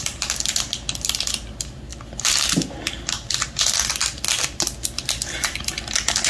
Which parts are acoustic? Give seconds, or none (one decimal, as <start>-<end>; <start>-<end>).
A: 0.0-6.3